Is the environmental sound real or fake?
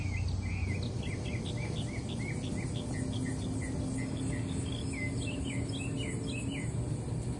real